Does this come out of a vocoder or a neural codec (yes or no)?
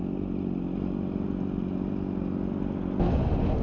no